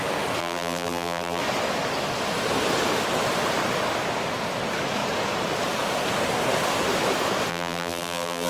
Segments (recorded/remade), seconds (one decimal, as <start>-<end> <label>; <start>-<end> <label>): 0.0-0.4 recorded; 0.4-1.4 remade; 1.4-7.5 recorded; 7.5-8.5 remade